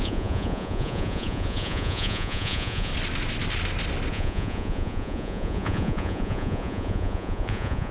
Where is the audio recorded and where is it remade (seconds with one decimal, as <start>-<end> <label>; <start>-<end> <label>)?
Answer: 0.0-2.9 remade; 2.9-4.1 recorded; 4.1-7.9 remade